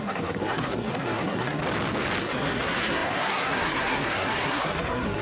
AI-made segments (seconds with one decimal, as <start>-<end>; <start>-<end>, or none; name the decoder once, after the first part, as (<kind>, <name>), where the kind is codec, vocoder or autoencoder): 0.0-1.6 (codec, SNAC); 2.2-5.2